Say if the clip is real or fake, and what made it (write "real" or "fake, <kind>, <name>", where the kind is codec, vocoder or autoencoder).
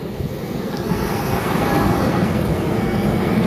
fake, codec, SNAC